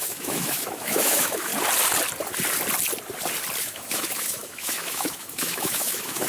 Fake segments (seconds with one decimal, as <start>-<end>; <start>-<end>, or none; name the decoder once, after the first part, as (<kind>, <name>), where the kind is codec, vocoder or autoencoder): 0.0-1.5 (autoencoder, DAC-VAE); 3.6-6.3